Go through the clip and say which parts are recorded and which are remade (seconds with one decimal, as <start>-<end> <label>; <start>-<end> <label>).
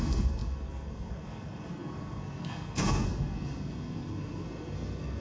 0.0-5.2 remade